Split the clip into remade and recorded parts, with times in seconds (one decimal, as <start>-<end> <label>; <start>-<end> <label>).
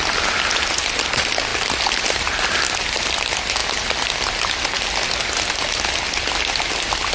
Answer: 0.0-7.1 recorded